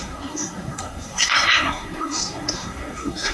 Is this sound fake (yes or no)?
yes